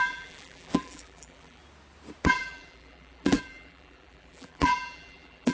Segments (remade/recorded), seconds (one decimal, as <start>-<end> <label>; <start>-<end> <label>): 0.0-1.6 remade; 1.6-2.3 recorded; 2.3-5.5 remade